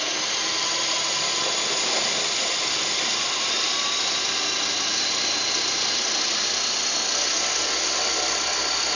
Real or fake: real